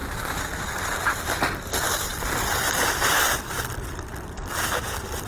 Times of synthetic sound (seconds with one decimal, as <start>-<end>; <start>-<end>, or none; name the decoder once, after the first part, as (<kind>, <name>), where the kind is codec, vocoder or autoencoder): 0.0-0.6 (vocoder, BigVGAN v2); 2.1-5.3